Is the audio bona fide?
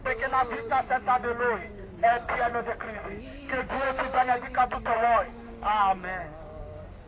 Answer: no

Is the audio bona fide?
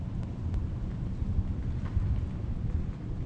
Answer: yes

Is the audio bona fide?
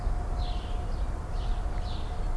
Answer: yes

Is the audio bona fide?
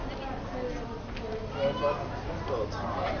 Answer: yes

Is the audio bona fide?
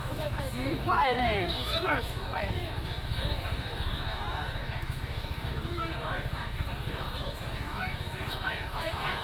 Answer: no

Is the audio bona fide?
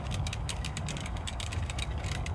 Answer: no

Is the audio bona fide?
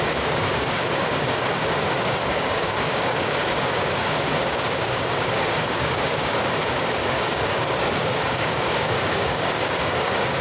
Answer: no